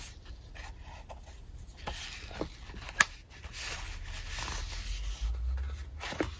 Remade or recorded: recorded